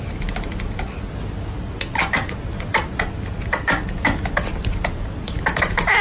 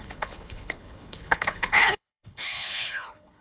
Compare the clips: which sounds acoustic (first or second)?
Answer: first